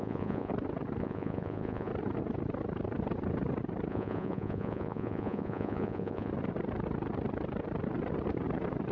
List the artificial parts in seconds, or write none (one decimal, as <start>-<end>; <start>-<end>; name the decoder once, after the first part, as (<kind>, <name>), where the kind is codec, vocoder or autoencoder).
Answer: 0.0-0.5 (vocoder, Vocos); 1.0-1.9; 3.9-6.3